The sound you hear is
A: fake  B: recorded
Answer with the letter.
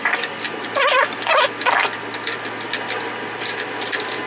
B